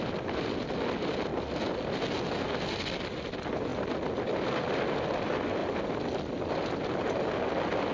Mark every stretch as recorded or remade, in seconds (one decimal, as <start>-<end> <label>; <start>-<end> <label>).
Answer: 0.0-1.3 remade; 1.3-3.0 recorded; 3.0-3.7 remade; 3.7-4.4 recorded; 4.4-5.6 remade; 5.6-7.9 recorded